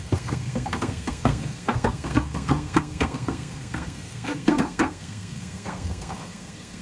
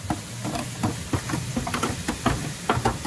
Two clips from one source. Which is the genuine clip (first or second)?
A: second